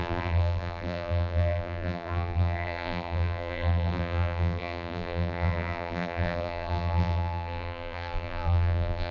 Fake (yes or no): yes